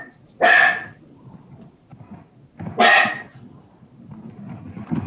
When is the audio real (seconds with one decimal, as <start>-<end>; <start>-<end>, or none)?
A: 1.9-4.0